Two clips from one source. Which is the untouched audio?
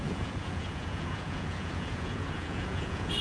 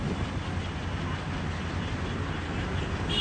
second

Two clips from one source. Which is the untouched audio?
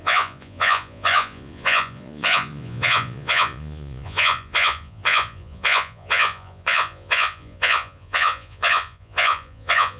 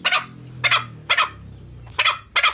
second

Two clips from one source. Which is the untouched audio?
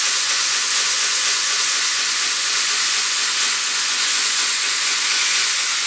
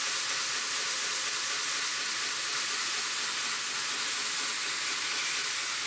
second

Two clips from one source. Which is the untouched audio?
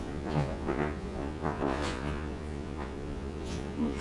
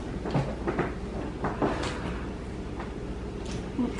second